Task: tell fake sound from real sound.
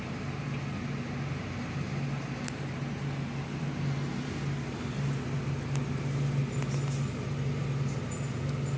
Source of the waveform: real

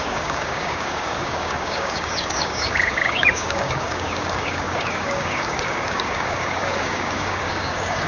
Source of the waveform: fake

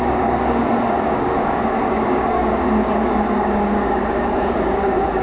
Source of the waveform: fake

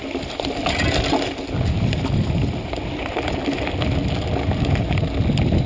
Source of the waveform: real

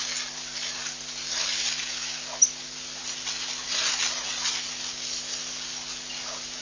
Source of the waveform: real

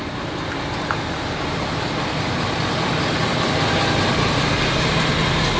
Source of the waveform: real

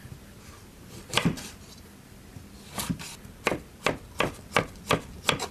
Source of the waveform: real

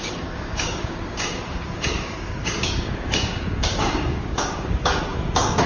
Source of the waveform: fake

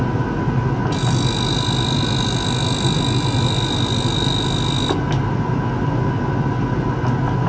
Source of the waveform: real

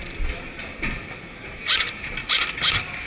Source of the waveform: real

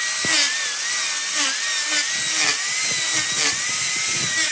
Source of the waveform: real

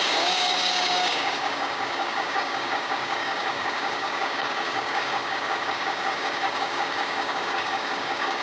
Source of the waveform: fake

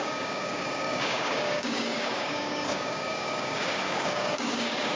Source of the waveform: fake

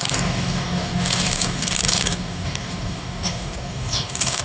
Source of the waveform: fake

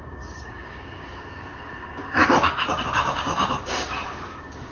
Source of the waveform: fake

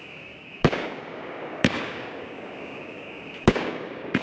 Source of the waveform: fake